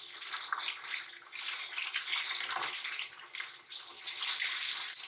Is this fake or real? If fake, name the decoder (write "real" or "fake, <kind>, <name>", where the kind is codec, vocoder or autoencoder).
real